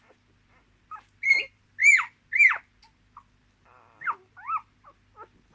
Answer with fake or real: real